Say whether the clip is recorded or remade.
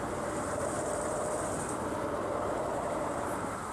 remade